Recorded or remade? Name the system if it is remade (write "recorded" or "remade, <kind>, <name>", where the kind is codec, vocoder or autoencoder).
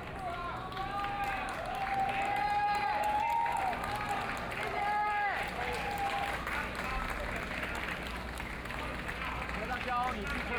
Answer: recorded